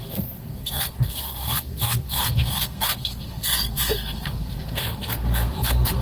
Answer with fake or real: fake